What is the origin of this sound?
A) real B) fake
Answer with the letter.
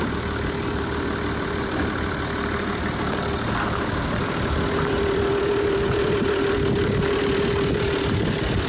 B